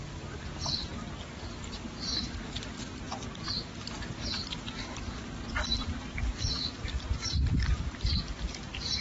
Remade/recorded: recorded